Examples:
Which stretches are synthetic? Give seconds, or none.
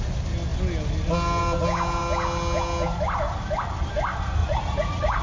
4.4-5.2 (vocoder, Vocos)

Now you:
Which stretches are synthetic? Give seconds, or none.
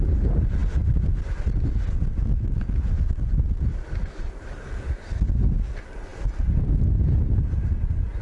none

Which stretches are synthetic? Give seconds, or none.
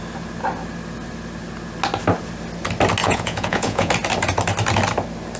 3.0-3.9 (vocoder, Vocos)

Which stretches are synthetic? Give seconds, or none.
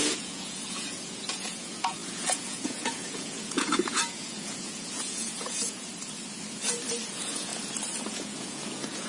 0.0-5.9 (vocoder, Vocos); 7.0-7.5; 8.1-9.1